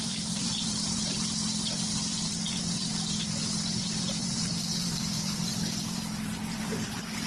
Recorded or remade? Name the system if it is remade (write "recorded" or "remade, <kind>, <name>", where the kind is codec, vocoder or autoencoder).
remade, vocoder, BigVGAN v2